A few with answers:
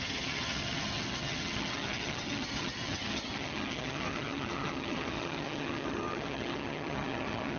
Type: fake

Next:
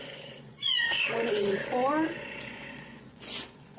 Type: fake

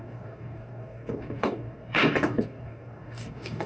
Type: fake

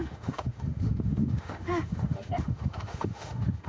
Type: fake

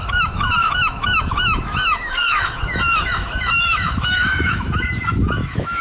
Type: fake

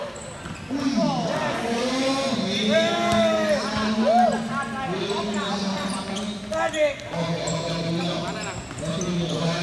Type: real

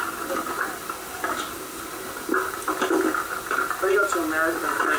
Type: real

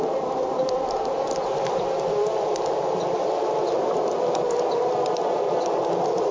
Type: real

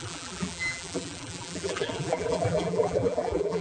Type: fake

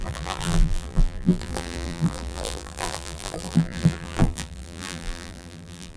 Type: fake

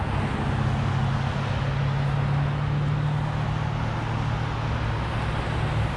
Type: real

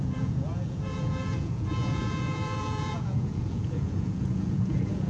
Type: fake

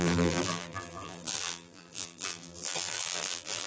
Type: fake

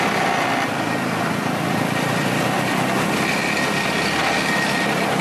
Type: real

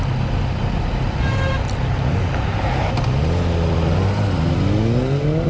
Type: real